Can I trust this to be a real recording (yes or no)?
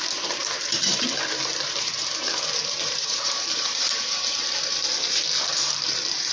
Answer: no